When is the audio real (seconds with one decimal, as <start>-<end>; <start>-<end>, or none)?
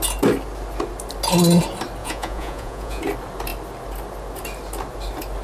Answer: 0.0-2.0; 3.0-5.4